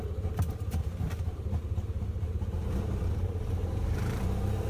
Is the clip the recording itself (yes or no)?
no